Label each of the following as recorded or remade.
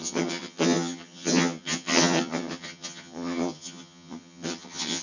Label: remade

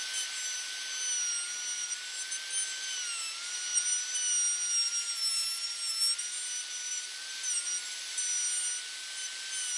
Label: recorded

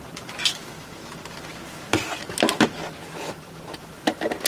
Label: recorded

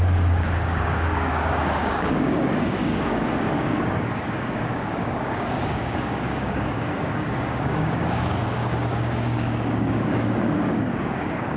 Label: remade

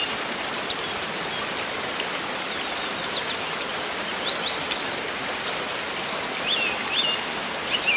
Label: recorded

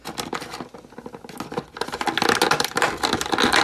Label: recorded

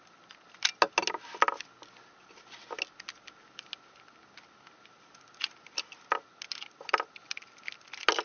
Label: recorded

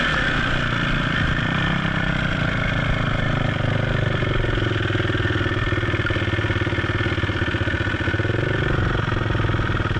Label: recorded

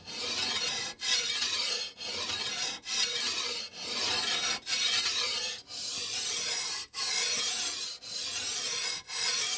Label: remade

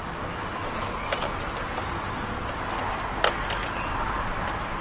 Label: recorded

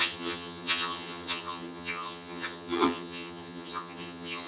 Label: remade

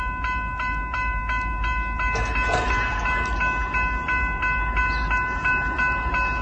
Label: recorded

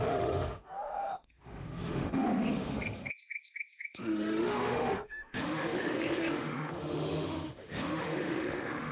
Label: remade